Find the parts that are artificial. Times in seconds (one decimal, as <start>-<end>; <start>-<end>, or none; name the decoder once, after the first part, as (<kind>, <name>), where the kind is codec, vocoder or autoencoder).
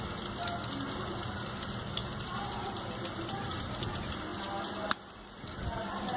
2.0-3.7 (vocoder, BigVGAN v2)